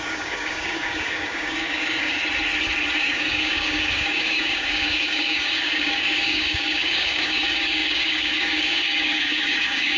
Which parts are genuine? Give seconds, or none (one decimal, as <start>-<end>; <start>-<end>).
2.2-2.9